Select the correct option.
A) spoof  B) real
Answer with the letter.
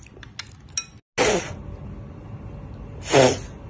B